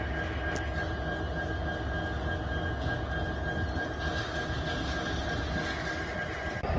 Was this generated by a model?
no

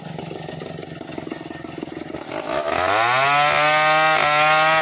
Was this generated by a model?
no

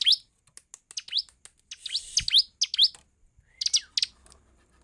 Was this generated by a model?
no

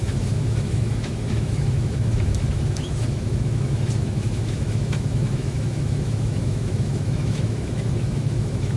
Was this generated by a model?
yes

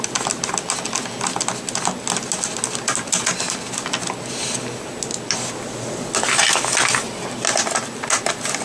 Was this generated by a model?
no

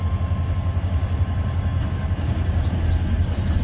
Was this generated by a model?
no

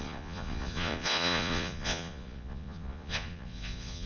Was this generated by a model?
yes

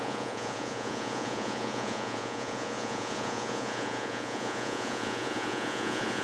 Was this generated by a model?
yes